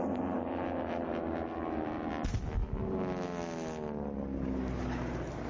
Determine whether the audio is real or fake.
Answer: real